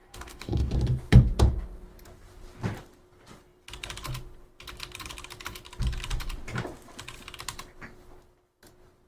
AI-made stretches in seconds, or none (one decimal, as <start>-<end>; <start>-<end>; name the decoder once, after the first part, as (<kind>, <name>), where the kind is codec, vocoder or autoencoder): 0.0-0.7 (codec, DAC)